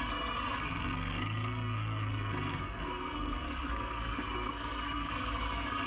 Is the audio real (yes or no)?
no